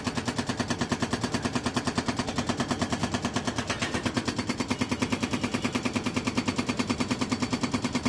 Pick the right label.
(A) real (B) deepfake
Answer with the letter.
A